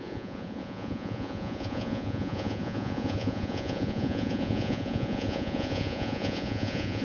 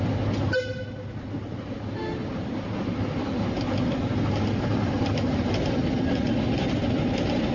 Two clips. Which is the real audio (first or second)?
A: second